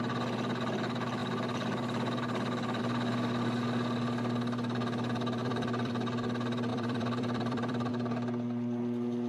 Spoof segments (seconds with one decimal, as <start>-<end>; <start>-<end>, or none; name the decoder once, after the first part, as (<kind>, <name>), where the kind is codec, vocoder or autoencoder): 5.4-5.9 (vocoder, BigVGAN v2); 6.7-7.9